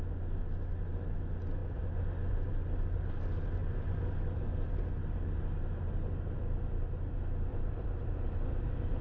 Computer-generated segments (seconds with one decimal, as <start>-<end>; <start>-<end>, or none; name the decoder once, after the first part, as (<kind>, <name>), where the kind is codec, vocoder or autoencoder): 1.6-2.5 (vocoder, BigVGAN v2); 3.6-4.1; 7.5-8.1